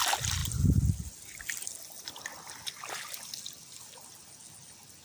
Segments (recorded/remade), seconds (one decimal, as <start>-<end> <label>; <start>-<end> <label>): 0.0-5.0 recorded